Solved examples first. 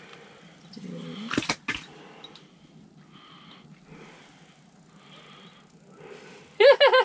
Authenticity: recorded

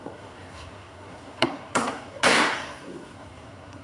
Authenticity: remade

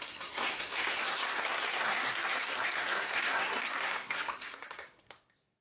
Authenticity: remade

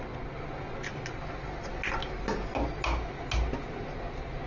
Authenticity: recorded